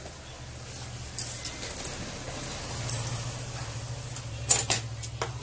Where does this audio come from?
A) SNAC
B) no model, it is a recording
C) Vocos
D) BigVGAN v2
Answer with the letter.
B